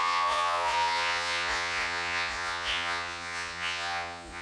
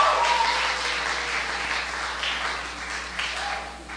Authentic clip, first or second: second